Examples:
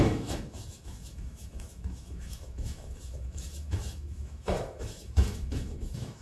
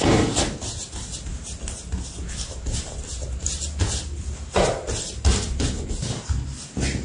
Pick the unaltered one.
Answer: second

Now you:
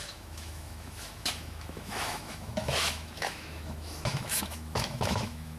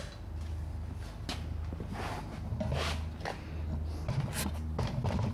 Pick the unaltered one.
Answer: second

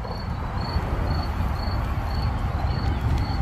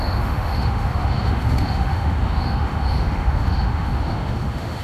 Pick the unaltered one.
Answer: first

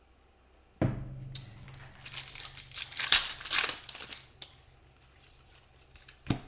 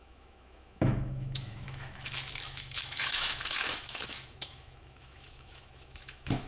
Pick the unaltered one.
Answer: first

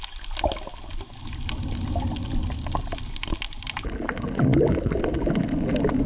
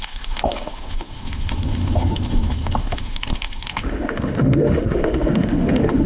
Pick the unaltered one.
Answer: first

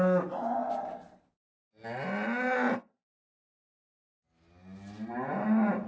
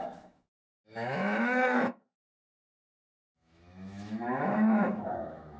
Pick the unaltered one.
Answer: first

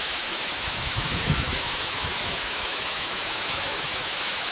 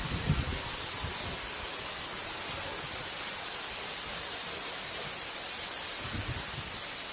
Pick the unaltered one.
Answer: second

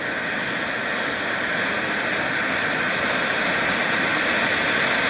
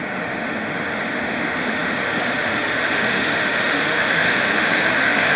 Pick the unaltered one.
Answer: first